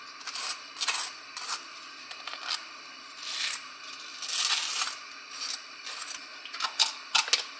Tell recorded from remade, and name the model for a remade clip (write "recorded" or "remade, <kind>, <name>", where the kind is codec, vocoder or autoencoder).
recorded